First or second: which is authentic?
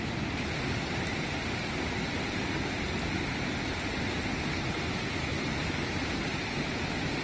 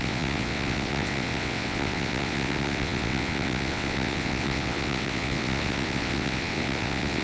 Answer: first